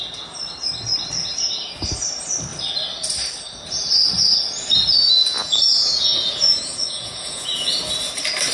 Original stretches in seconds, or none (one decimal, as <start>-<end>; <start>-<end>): 0.0-5.0; 7.7-8.5